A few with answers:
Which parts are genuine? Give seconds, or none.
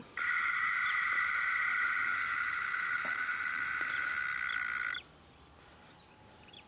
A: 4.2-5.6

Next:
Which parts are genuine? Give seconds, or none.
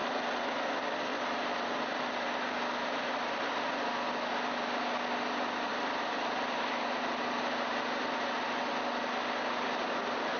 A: 0.7-1.1; 2.1-5.7; 8.7-10.4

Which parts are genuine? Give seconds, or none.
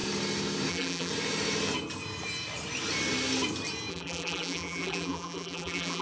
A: 0.0-0.7; 1.1-3.9